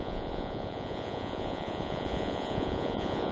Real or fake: fake